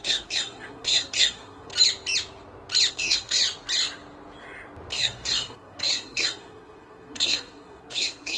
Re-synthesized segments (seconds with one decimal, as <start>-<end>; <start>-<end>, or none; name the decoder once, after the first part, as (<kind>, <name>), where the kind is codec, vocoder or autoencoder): 0.0-1.7 (codec, SNAC); 2.9-3.4; 4.9-8.4